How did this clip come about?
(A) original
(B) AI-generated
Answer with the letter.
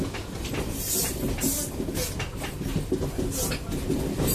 A